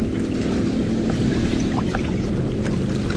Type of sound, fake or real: real